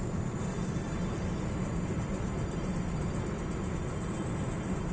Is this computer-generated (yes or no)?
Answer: no